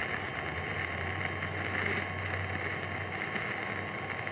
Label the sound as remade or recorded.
recorded